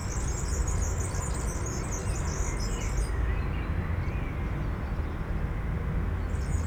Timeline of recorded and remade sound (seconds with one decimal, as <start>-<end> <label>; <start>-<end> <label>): 0.0-1.2 remade; 1.2-6.7 recorded